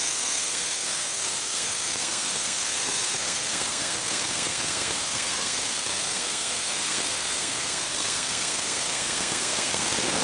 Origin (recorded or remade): remade